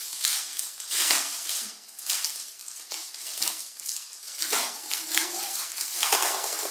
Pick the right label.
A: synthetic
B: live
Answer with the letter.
A